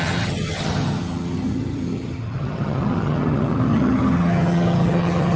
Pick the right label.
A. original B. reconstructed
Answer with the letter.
B